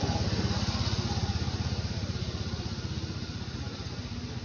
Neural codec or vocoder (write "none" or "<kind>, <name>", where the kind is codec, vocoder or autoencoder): none